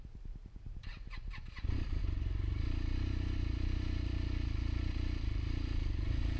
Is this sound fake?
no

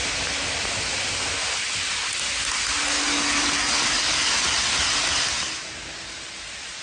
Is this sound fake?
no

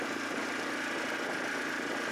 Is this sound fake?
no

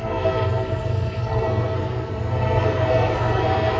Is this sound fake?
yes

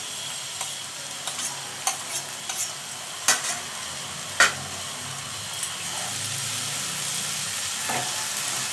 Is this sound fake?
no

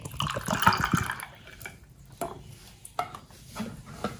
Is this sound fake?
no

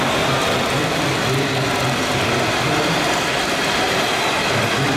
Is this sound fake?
no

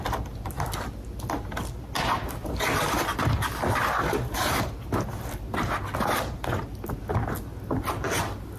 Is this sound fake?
no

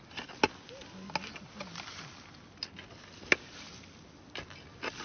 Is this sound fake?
no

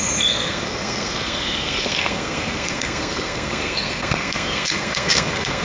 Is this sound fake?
yes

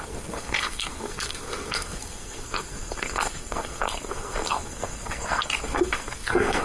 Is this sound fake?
yes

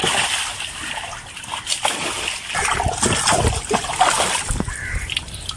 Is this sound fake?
no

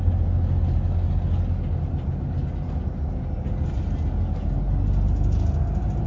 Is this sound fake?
no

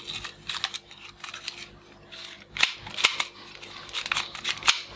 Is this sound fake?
no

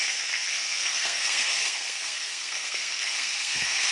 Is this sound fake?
yes